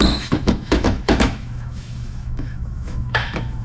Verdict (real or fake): fake